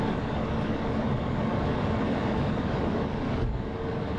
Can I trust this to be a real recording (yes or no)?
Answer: no